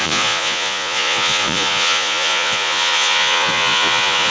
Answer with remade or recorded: remade